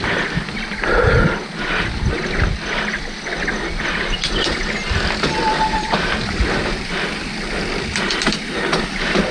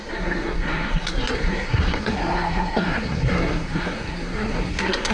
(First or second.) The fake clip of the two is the second